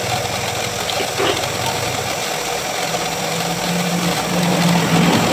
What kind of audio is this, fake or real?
real